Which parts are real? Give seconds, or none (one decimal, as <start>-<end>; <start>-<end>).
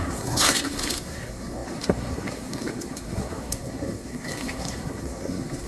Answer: none